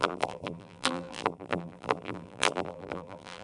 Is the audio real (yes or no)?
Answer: no